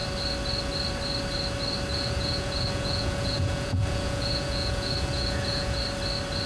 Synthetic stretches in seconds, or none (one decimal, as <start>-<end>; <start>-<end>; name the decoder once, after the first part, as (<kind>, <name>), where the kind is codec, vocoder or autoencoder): 1.9-5.8 (vocoder, Vocos)